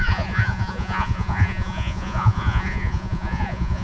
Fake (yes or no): yes